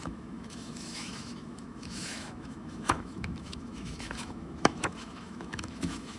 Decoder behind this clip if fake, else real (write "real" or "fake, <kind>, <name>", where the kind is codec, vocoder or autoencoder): fake, autoencoder, DAC-VAE